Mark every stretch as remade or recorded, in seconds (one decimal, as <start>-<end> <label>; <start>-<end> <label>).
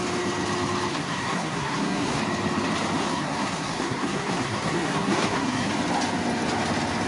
0.0-0.9 recorded; 0.9-2.2 remade; 2.2-3.0 recorded; 3.0-5.7 remade; 5.7-7.1 recorded